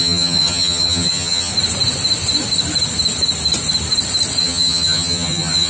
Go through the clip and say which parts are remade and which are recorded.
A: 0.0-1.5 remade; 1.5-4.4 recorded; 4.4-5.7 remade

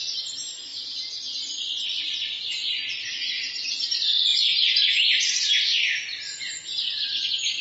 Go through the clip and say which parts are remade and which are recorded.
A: 0.0-0.7 recorded; 0.7-2.1 remade; 2.1-4.3 recorded; 4.3-7.6 remade